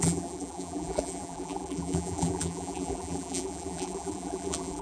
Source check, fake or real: fake